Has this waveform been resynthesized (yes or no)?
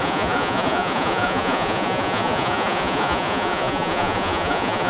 yes